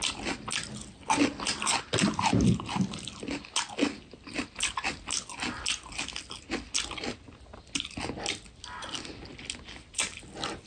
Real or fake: real